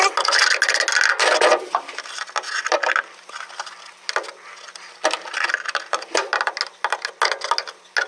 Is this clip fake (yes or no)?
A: no